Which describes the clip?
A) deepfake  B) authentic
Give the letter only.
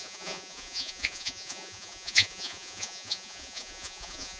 A